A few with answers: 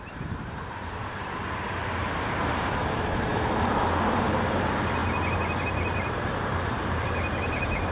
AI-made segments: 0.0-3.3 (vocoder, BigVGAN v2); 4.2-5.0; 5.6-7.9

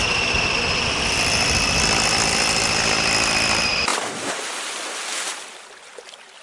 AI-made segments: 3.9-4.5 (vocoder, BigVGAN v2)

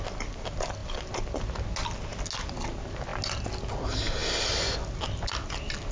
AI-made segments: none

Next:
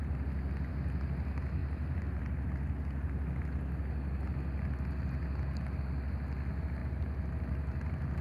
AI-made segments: 1.6-2.5 (vocoder, BigVGAN v2); 6.8-8.2

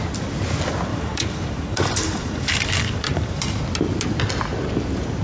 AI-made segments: 0.9-3.6 (vocoder, BigVGAN v2)

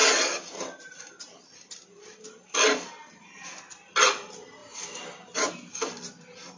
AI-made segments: 4.6-5.5 (vocoder, BigVGAN v2)

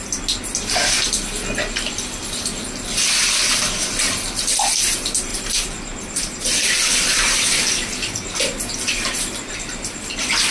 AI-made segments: 5.3-10.5 (vocoder, BigVGAN v2)

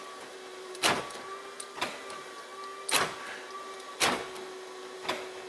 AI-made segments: 0.5-1.0 (vocoder, BigVGAN v2)